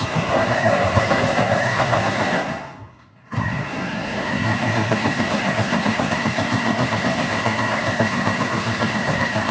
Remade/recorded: remade